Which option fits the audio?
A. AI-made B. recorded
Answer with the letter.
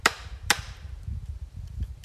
A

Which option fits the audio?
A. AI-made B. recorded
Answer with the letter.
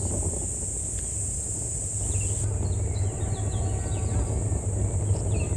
B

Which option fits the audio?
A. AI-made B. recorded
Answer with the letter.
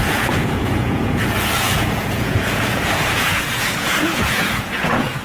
A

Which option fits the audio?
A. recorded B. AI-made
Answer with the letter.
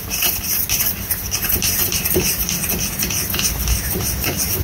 A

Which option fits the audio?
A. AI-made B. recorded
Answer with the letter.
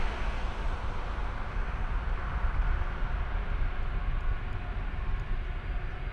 B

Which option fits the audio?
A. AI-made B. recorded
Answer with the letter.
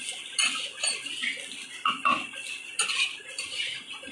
B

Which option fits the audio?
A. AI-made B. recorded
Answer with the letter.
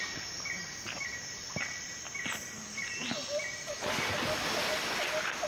B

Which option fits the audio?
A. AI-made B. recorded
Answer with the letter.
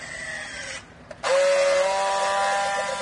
B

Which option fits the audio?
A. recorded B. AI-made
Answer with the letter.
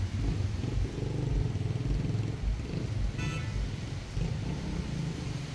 A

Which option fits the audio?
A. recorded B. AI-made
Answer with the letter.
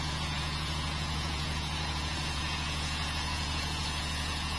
B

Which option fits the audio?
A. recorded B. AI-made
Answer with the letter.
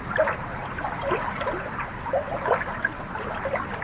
B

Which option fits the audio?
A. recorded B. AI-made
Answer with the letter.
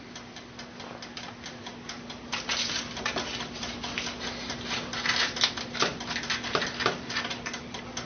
A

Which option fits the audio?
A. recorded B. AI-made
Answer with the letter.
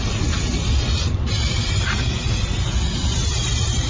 A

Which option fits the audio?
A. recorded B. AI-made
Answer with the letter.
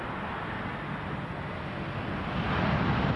A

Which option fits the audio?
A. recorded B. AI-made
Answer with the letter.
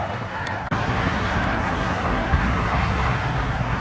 B